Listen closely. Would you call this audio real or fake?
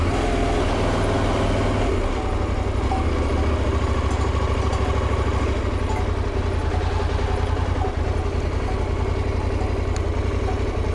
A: real